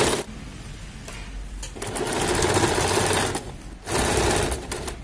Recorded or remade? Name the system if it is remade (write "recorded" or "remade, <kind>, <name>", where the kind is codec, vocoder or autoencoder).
recorded